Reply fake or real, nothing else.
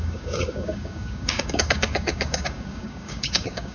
fake